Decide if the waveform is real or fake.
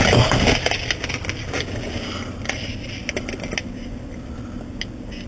real